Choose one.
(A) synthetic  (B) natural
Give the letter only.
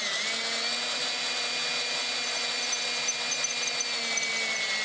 B